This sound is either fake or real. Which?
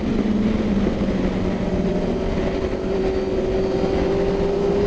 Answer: real